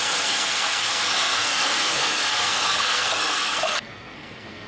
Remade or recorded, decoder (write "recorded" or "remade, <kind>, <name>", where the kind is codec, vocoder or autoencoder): remade, codec, SNAC